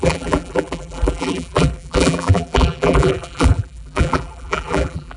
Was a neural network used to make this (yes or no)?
yes